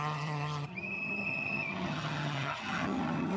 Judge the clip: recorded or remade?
remade